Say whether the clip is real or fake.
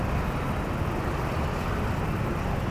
real